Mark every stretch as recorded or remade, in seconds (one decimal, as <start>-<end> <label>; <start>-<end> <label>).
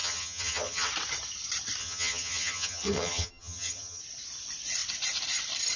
0.0-0.9 remade; 0.9-1.8 recorded; 1.8-4.0 remade; 4.0-5.8 recorded